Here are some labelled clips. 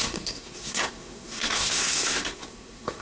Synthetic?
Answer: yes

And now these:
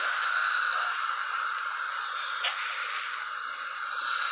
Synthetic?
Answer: no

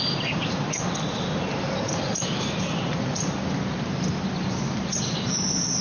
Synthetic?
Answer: yes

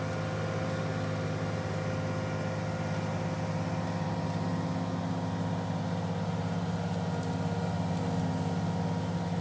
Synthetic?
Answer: no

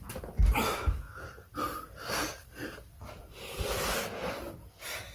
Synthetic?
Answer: no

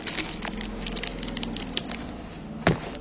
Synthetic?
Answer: no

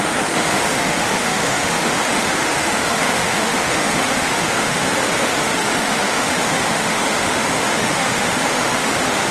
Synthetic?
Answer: yes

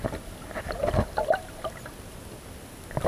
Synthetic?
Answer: no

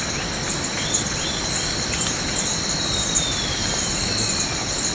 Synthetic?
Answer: no